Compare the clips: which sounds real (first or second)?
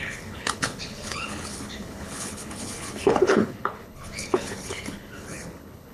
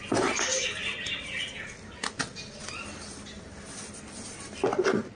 second